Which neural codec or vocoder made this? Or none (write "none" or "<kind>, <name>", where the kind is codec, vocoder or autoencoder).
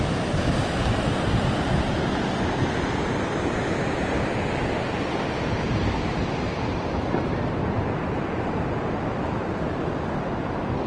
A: vocoder, BigVGAN v2